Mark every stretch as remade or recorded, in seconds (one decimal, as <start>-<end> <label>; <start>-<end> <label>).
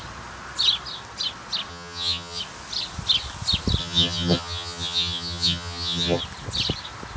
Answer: 0.0-1.7 recorded; 1.7-2.4 remade; 2.4-3.8 recorded; 3.8-6.2 remade; 6.2-7.2 recorded